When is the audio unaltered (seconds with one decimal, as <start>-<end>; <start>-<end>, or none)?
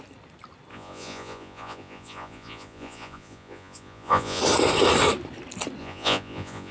0.0-0.7; 4.4-5.8